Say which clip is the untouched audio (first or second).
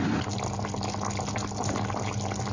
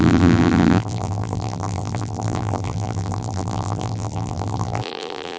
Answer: first